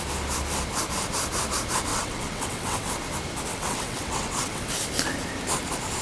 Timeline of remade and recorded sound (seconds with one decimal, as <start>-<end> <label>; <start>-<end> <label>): 0.0-1.9 recorded; 1.9-2.9 remade; 2.9-3.5 recorded; 3.5-4.7 remade; 4.7-6.0 recorded